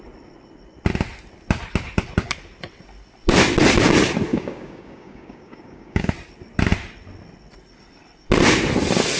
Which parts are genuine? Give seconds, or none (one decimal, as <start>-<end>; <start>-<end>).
0.0-4.3; 6.1-9.2